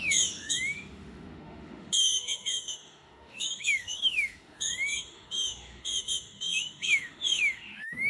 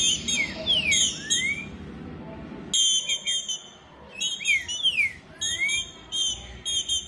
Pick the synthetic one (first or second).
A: first